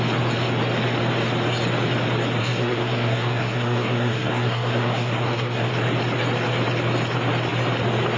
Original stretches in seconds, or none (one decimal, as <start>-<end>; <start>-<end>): 0.0-2.4; 5.7-8.2

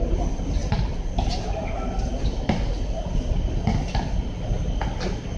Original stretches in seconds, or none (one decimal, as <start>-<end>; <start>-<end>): 0.0-5.4

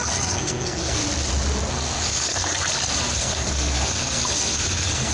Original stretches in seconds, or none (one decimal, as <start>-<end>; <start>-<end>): 1.0-1.7; 2.5-3.1

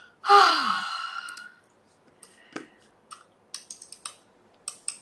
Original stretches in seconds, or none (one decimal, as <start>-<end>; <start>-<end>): 0.0-0.5; 1.6-5.0

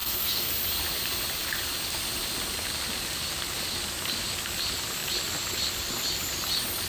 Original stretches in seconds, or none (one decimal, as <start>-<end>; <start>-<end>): 0.5-6.9

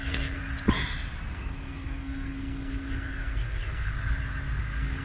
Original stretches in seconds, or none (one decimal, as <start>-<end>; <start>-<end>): 0.4-1.3; 3.9-4.6